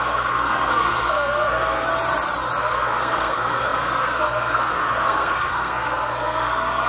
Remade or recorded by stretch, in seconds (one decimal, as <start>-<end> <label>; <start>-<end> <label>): 0.0-1.9 remade; 1.9-2.6 recorded; 2.6-6.9 remade